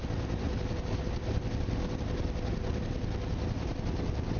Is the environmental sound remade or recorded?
recorded